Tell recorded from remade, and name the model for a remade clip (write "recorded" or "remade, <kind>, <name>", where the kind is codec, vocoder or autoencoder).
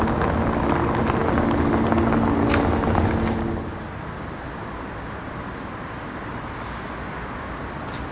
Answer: recorded